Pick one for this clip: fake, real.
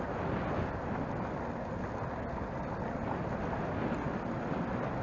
real